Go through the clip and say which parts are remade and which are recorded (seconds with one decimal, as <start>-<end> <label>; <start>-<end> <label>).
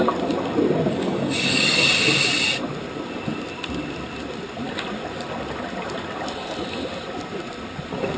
0.0-0.9 recorded; 0.9-1.9 remade; 1.9-8.2 recorded